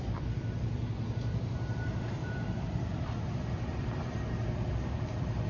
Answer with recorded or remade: remade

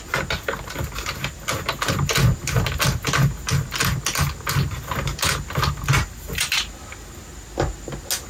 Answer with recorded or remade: recorded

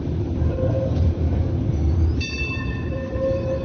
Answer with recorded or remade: remade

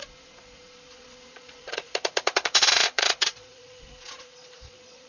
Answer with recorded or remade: remade